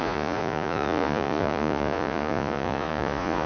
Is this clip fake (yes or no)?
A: yes